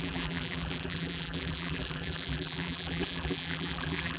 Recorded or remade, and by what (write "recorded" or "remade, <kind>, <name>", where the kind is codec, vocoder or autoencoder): remade, vocoder, BigVGAN v2